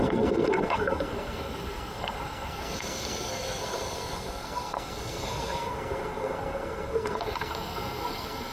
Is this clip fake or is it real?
fake